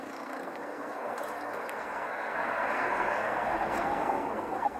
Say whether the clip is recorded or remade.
remade